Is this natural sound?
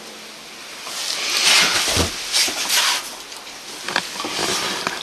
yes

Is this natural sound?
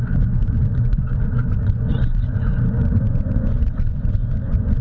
no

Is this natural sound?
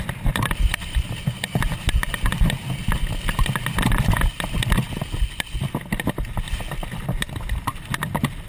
yes